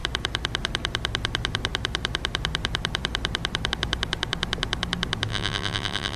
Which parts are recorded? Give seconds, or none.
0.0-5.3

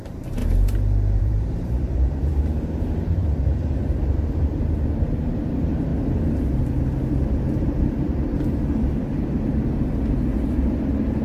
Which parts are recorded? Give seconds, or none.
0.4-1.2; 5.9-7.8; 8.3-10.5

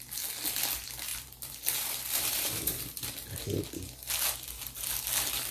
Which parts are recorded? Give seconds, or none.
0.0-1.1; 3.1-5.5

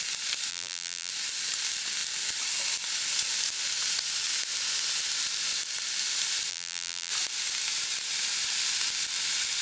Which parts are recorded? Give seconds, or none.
0.0-0.5; 1.1-6.5; 7.1-9.6

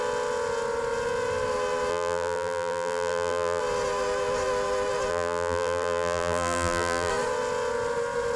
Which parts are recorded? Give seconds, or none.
0.0-1.9; 3.6-5.1; 7.1-8.4